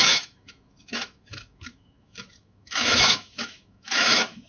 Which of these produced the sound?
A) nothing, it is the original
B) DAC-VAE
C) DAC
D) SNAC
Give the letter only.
B